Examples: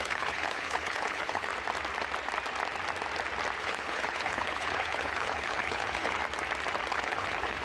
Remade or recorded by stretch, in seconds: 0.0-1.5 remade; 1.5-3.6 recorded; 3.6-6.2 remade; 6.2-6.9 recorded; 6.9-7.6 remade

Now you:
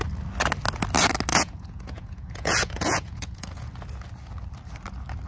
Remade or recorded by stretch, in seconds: 0.0-1.3 recorded; 1.3-3.7 remade; 3.7-5.3 recorded

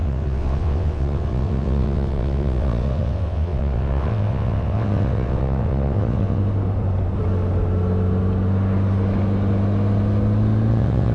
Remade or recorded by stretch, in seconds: 0.0-6.4 remade; 6.4-10.7 recorded; 10.7-11.1 remade

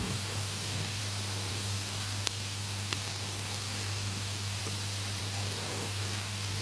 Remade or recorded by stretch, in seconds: 0.0-1.0 remade; 1.0-1.5 recorded; 1.5-4.6 remade; 4.6-5.2 recorded; 5.2-6.6 remade

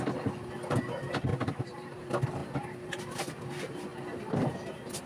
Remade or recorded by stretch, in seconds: 0.0-1.3 recorded; 1.3-2.0 remade; 2.0-5.1 recorded